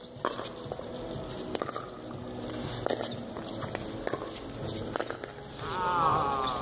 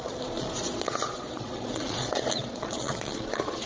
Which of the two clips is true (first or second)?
first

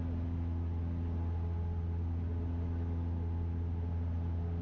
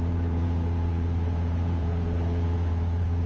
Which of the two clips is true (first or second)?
first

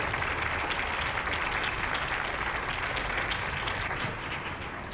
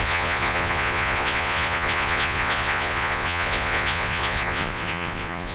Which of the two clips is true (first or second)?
first